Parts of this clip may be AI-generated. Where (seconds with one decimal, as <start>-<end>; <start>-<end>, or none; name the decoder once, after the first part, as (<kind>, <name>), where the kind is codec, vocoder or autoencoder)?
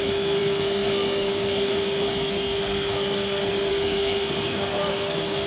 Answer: 0.0-5.5 (codec, SNAC)